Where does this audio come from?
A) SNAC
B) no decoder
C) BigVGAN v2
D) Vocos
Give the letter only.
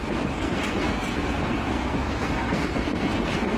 A